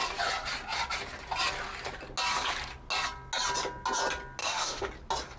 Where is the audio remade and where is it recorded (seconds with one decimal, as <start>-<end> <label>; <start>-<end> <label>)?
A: 0.0-4.4 recorded; 4.4-4.9 remade; 4.9-5.4 recorded